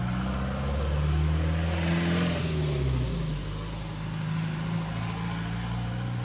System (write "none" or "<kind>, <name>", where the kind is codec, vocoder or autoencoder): none